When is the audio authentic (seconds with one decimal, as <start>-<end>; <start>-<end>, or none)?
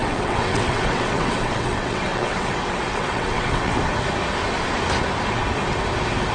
3.8-6.3